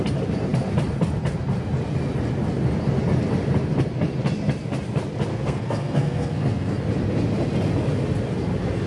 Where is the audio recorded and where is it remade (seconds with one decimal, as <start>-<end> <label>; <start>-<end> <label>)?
0.0-5.3 recorded; 5.3-6.7 remade; 6.7-8.9 recorded

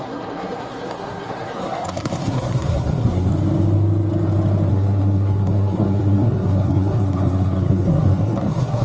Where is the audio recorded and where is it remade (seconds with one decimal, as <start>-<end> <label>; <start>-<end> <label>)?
0.0-3.3 remade; 3.3-4.7 recorded; 4.7-8.8 remade

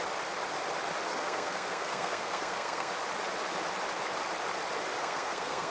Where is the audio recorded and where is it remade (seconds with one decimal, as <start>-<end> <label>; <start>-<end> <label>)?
0.0-1.1 recorded; 1.1-2.9 remade; 2.9-5.0 recorded; 5.0-5.7 remade